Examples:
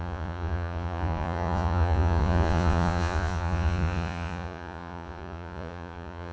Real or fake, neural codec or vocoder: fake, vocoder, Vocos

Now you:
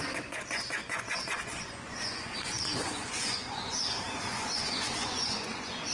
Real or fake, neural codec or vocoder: fake, vocoder, Vocos